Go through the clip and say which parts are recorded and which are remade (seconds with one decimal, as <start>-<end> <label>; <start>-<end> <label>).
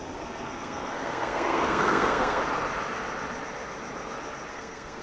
0.0-2.4 remade; 2.4-4.5 recorded; 4.5-5.0 remade